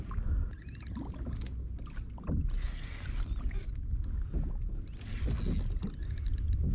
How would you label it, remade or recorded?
recorded